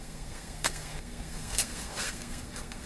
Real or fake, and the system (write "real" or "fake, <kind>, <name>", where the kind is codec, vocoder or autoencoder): fake, codec, SNAC